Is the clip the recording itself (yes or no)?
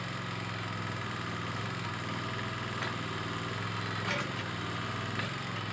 yes